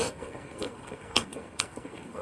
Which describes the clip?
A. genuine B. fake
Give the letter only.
B